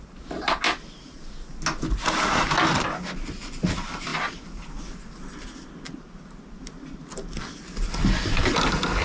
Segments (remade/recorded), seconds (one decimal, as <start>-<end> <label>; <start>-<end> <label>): 0.0-9.0 recorded

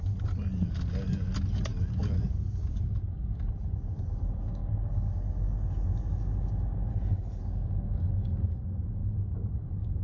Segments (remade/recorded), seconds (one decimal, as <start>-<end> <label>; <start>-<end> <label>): 0.0-6.9 recorded; 6.9-7.4 remade; 7.4-10.0 recorded

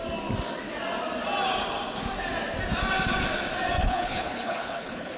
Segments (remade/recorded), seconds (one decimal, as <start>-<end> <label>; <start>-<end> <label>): 0.0-3.8 recorded; 3.8-5.2 remade

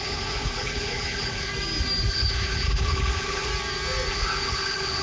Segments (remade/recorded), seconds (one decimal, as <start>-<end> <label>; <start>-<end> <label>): 0.0-1.5 remade; 1.5-2.1 recorded; 2.1-3.5 remade; 3.5-4.1 recorded; 4.1-5.0 remade

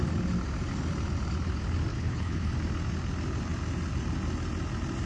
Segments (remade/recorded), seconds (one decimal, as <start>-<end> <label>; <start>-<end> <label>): 0.0-1.9 recorded; 1.9-2.5 remade; 2.5-5.1 recorded

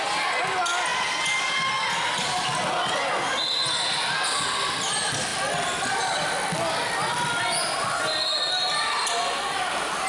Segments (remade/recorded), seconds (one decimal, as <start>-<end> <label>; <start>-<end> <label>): 0.0-10.1 recorded

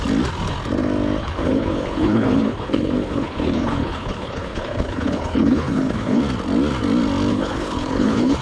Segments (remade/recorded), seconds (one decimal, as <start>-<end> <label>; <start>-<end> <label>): 0.0-1.2 recorded; 1.2-6.2 remade; 6.2-7.3 recorded; 7.3-8.4 remade